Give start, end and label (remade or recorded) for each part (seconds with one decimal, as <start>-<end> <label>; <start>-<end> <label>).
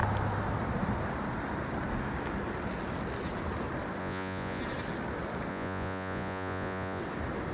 0.0-4.0 recorded; 4.0-4.6 remade; 4.6-5.5 recorded; 5.5-7.0 remade; 7.0-7.5 recorded